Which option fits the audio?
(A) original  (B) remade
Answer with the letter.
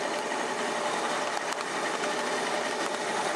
A